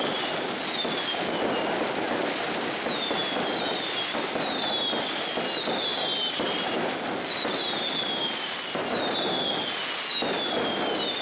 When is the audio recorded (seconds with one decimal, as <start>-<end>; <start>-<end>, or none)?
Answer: 0.0-11.2